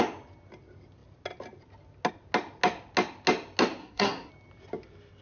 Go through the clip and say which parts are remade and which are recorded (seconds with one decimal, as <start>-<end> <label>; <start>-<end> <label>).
0.0-3.8 recorded; 3.8-4.3 remade; 4.3-5.2 recorded